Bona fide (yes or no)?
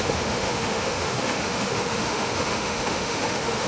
no